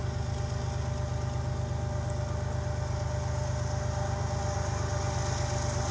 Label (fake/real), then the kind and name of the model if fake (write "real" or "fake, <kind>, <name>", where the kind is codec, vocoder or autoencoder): real